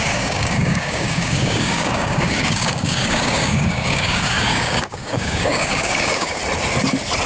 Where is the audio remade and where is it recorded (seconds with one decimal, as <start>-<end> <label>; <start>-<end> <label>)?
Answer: 0.0-6.4 remade; 6.4-7.3 recorded